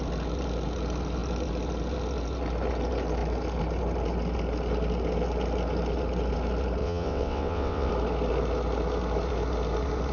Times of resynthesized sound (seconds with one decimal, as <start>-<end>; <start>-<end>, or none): 6.8-7.9